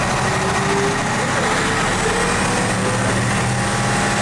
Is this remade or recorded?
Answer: recorded